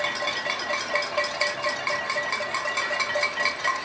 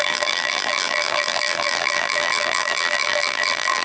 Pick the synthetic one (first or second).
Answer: second